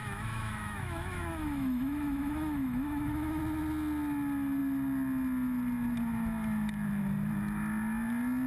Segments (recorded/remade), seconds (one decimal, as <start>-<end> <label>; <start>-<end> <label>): 0.0-3.4 remade; 3.4-8.5 recorded